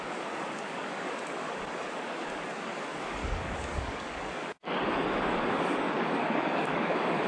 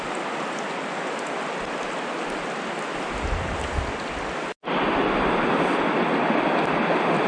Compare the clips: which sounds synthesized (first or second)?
first